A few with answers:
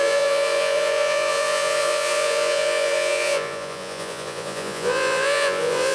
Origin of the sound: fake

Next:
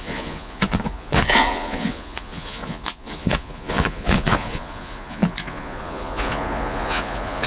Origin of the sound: fake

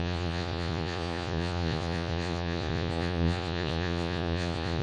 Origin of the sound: fake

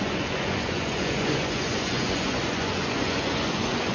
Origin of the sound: fake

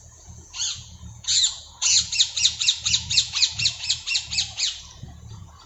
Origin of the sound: fake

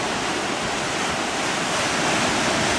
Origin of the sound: real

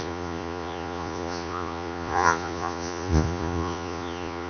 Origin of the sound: fake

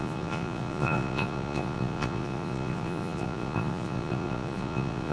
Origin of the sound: fake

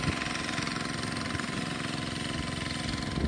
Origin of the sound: real